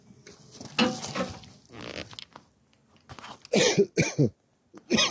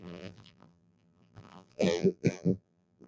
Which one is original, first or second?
first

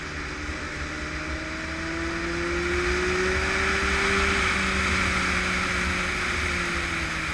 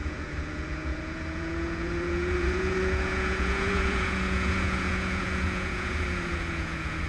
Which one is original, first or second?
first